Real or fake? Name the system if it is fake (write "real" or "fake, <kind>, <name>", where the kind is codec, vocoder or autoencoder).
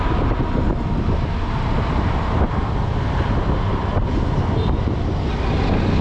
real